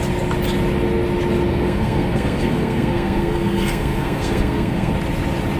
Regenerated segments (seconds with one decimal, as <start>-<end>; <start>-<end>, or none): 1.5-4.9